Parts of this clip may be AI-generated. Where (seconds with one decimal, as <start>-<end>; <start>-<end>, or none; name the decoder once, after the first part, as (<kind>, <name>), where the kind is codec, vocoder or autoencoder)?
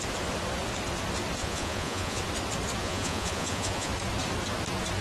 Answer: 1.4-2.2 (vocoder, Vocos); 2.8-3.9